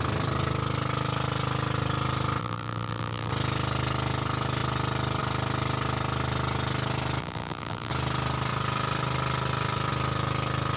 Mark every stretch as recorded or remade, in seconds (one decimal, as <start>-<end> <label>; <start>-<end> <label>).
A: 0.0-2.4 recorded; 2.4-3.3 remade; 3.3-7.2 recorded; 7.2-7.9 remade; 7.9-10.8 recorded